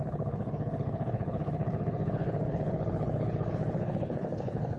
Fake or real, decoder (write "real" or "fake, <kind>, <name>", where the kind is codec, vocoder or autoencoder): fake, codec, HILCodec